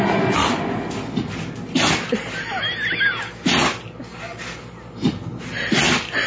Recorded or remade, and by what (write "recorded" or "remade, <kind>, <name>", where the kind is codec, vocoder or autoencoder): recorded